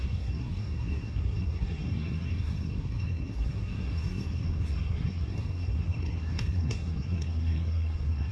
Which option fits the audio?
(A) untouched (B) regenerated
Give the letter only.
B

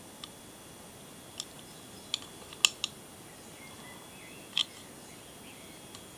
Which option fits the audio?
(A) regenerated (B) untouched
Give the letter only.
B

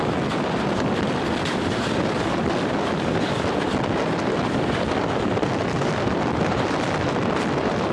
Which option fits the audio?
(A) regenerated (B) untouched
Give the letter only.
A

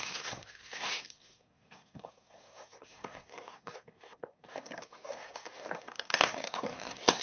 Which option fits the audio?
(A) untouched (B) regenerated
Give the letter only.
B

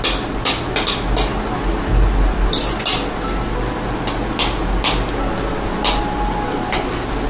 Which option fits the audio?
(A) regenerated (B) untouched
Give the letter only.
B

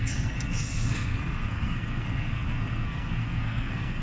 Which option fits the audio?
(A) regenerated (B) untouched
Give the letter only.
A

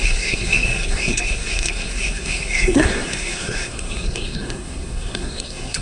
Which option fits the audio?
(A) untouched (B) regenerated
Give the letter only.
B